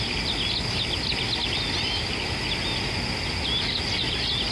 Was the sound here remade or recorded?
recorded